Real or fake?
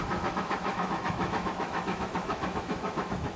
fake